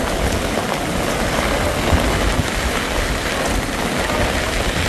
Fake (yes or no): no